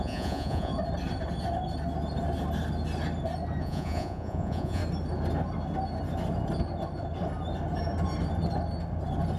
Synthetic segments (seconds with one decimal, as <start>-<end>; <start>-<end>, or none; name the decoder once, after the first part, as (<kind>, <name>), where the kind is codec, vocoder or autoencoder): 0.0-0.7 (vocoder, Vocos); 3.6-4.8